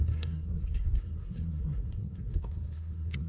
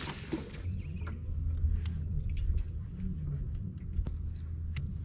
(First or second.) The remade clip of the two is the first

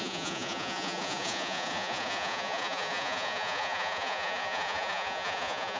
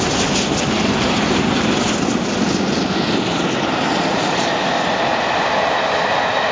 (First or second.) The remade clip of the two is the first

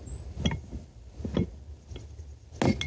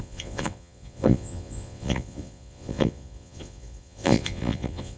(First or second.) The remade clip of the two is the second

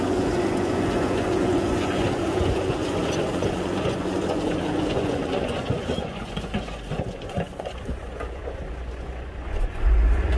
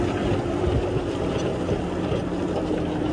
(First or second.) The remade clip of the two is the first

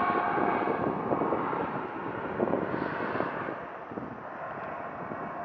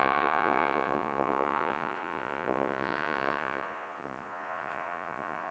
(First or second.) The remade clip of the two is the second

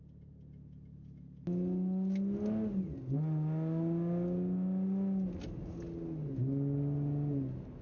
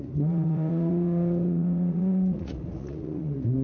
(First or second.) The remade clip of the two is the second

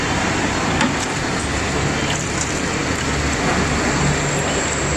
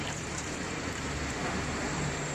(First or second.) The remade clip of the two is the second